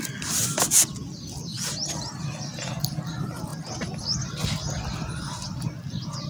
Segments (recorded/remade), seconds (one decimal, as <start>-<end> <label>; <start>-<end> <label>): 0.0-6.3 recorded

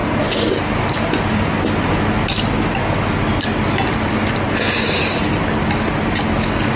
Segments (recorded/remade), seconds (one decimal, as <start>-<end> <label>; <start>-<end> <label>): 0.0-6.8 recorded

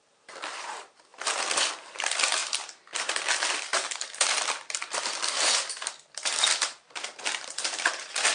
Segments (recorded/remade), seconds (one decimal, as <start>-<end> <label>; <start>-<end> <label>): 0.0-8.3 remade

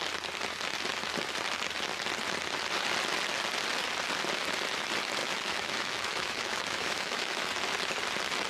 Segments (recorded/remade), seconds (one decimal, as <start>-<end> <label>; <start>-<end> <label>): 0.0-5.2 recorded; 5.2-7.5 remade; 7.5-8.5 recorded

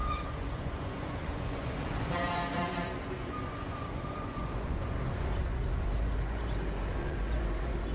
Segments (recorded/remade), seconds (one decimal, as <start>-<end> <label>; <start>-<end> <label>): 0.0-7.9 remade